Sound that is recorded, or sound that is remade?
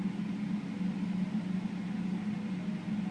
recorded